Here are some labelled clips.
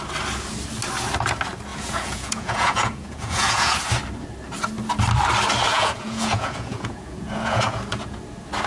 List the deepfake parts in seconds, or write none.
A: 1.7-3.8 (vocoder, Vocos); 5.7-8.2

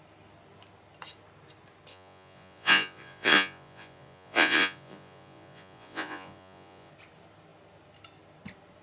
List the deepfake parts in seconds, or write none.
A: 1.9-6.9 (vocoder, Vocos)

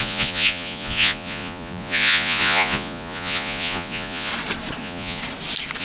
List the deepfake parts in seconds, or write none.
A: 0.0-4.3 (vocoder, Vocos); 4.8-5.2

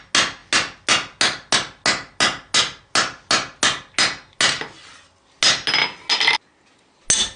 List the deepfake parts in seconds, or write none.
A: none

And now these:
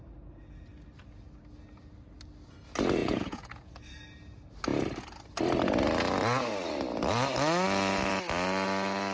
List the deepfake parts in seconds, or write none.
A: 3.0-3.7 (vocoder, Vocos)

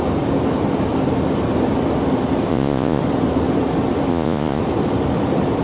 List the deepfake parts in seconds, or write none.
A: 2.5-3.0 (vocoder, Vocos); 4.1-4.6

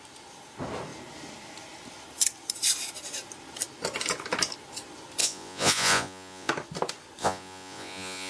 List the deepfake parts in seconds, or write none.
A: 5.2-6.5 (vocoder, Vocos); 7.2-8.3

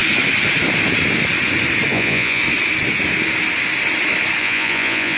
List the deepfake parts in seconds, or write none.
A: 1.9-2.4 (vocoder, Vocos); 4.4-5.2